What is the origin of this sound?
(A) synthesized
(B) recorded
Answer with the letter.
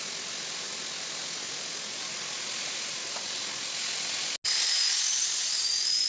B